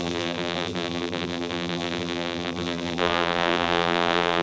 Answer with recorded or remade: remade